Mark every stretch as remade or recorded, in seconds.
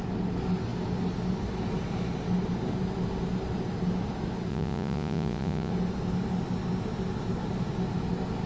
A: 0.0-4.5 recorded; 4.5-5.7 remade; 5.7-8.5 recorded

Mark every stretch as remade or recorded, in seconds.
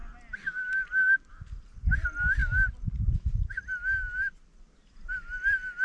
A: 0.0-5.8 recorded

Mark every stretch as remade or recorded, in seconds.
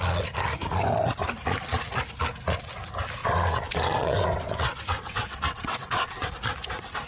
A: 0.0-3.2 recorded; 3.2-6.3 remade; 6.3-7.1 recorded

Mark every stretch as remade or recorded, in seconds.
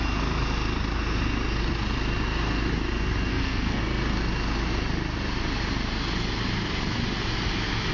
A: 0.0-3.3 recorded; 3.3-3.8 remade; 3.8-7.9 recorded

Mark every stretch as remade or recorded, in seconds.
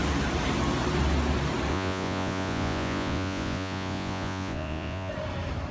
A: 0.0-1.7 recorded; 1.7-5.1 remade; 5.1-5.7 recorded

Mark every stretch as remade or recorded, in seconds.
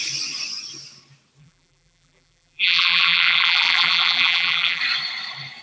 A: 0.0-1.4 recorded; 1.4-4.8 remade; 4.8-5.6 recorded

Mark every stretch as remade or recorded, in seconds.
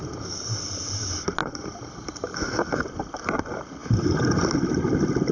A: 0.0-0.6 remade; 0.6-5.3 recorded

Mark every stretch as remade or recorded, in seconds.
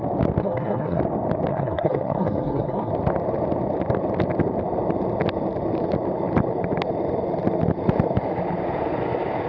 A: 0.0-0.4 recorded; 0.4-1.0 remade; 1.0-1.5 recorded; 1.5-2.9 remade; 2.9-9.5 recorded